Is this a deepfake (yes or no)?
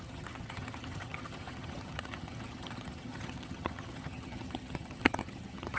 yes